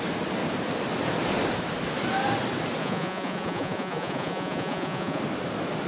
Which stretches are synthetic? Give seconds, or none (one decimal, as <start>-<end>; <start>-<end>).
2.8-5.2